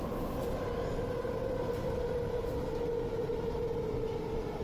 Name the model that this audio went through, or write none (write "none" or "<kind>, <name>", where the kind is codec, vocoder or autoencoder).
none